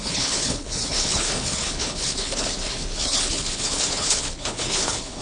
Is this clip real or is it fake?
fake